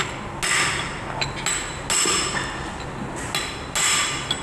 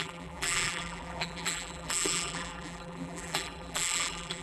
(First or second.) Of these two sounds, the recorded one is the first